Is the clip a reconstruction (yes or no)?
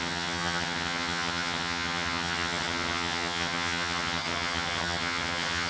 yes